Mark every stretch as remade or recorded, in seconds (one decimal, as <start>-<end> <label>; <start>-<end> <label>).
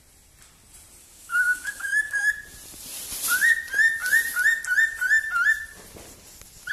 0.0-1.0 recorded; 1.0-2.3 remade; 2.3-6.7 recorded